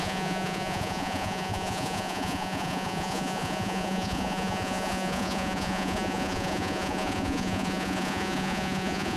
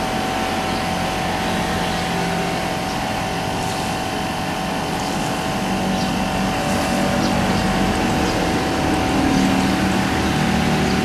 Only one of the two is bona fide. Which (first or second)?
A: second